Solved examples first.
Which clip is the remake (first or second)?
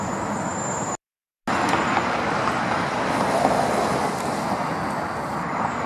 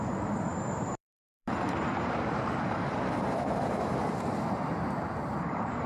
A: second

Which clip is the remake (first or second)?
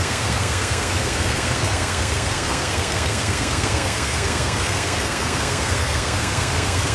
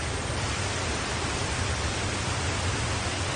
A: first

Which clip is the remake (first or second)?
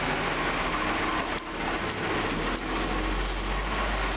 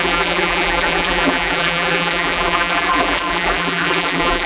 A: second